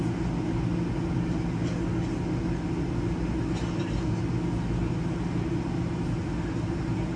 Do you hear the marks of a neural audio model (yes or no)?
no